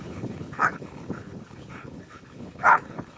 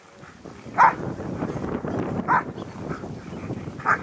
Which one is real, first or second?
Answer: second